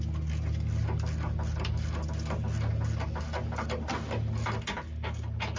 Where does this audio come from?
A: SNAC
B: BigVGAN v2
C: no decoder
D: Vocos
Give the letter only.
C